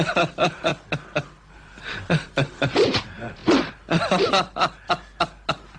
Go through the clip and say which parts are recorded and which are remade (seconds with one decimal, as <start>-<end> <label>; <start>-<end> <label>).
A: 0.0-0.7 remade; 0.7-1.5 recorded; 1.5-3.4 remade; 3.4-5.8 recorded